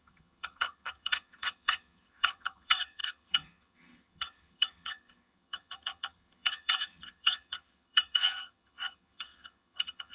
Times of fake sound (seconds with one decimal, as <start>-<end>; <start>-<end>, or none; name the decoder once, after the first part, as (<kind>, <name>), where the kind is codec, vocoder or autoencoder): 0.0-10.1 (vocoder, HiFi-GAN)